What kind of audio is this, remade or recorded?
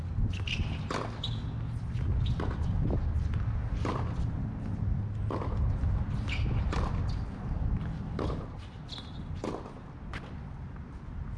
recorded